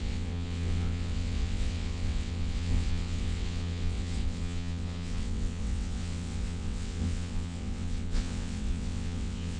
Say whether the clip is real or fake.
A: fake